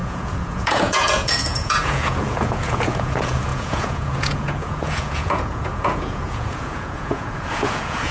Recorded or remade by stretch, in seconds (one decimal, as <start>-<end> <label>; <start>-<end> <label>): 0.0-8.1 remade